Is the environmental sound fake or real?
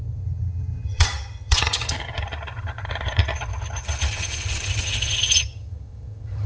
fake